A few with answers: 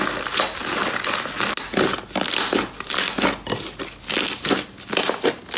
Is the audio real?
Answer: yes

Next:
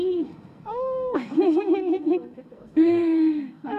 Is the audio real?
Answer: no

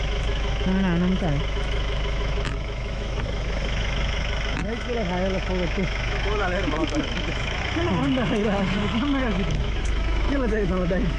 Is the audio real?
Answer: no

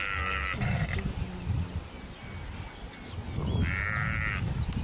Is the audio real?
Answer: yes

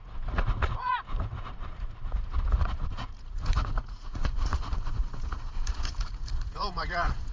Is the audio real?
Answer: no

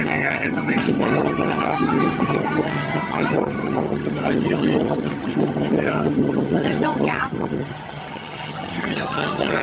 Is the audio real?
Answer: no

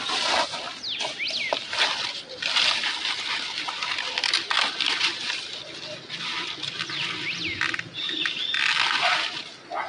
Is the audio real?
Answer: yes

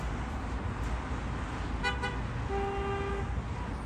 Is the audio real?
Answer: yes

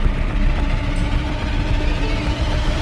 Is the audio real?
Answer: yes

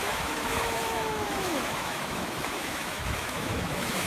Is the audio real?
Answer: no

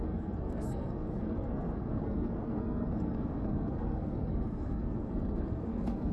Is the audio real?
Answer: no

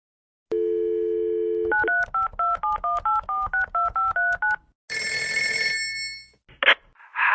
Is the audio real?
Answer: yes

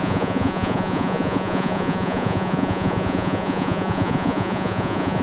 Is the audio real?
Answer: no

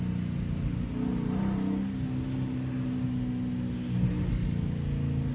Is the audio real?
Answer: yes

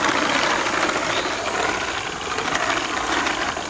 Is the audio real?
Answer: yes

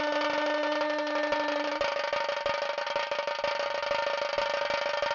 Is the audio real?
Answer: yes